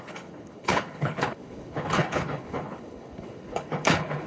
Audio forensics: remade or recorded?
remade